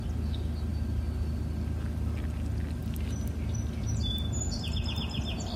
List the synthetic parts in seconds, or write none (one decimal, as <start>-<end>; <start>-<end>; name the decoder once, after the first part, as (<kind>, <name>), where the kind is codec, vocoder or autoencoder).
none